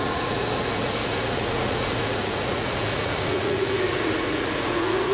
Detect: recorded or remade remade